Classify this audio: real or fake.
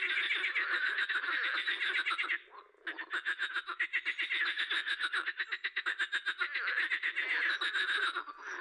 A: real